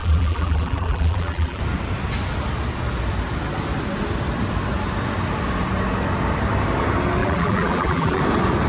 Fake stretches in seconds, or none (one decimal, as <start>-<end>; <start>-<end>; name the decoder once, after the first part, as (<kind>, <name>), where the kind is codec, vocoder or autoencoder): 0.0-1.6 (vocoder, BigVGAN v2); 7.2-8.2